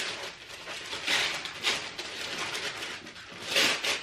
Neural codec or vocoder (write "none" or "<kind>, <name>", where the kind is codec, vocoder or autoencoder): none